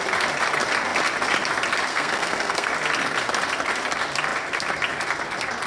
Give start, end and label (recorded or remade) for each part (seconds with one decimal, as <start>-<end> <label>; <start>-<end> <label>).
0.0-1.9 recorded; 1.9-2.7 remade; 2.7-5.7 recorded